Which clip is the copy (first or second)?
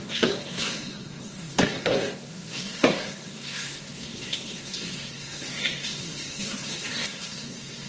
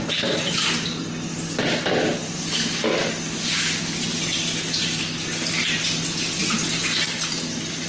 first